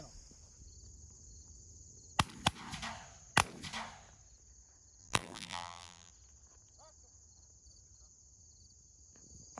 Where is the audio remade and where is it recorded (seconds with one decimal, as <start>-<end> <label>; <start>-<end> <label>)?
0.0-5.0 recorded; 5.0-6.1 remade; 6.1-9.6 recorded